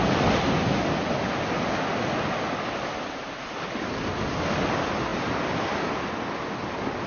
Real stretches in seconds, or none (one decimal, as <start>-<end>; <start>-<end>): 0.0-7.1